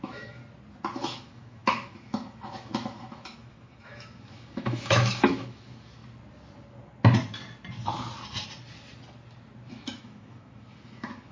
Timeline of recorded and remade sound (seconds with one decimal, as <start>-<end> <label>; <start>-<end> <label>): 0.0-0.4 remade; 0.4-1.0 recorded; 1.0-6.0 remade; 6.0-9.7 recorded; 9.7-11.3 remade